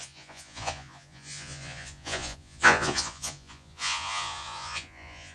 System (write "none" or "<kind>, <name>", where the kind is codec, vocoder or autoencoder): vocoder, Vocos